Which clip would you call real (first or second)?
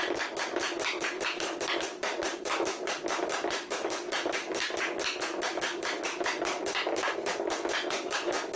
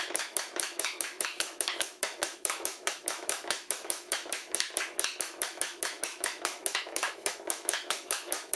first